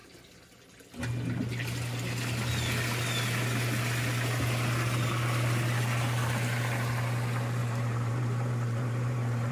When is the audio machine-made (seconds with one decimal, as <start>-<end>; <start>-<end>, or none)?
7.6-9.5